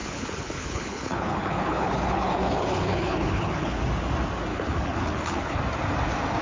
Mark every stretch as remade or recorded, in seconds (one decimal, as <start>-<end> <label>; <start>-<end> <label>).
0.0-3.8 remade; 3.8-4.5 recorded; 4.5-5.6 remade; 5.6-6.4 recorded